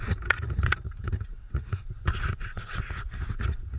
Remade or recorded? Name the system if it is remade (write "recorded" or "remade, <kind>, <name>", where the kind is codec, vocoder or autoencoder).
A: remade, vocoder, Vocos